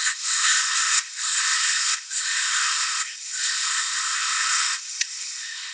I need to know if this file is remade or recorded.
remade